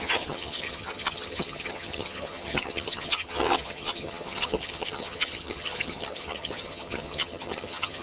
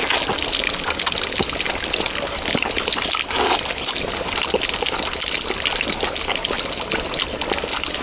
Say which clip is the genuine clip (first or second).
second